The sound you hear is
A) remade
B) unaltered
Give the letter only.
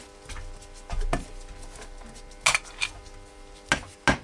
B